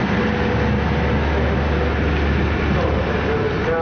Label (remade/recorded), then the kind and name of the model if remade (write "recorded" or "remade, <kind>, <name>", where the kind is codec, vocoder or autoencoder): recorded